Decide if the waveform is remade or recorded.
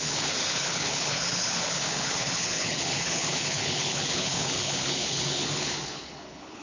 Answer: remade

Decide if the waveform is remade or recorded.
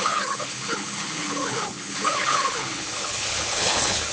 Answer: remade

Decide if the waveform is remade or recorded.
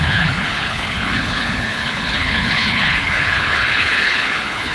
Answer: remade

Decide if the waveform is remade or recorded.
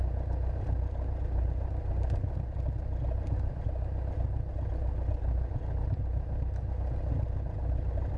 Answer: recorded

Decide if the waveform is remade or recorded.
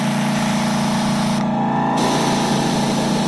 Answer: recorded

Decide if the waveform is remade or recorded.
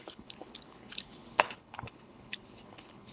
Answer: remade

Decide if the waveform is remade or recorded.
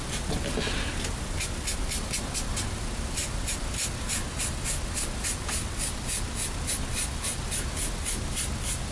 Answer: recorded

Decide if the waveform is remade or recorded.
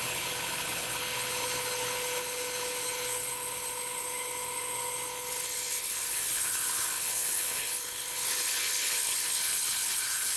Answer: remade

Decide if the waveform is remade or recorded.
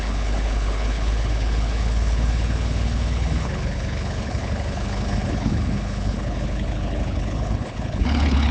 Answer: remade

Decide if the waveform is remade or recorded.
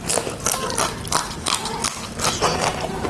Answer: recorded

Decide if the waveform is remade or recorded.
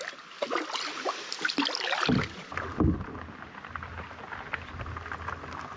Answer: recorded